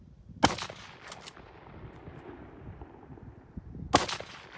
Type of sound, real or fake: real